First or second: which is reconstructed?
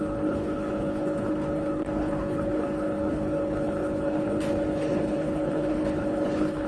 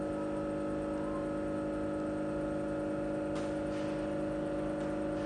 first